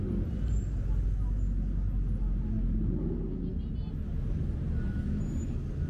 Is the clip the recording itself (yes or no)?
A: yes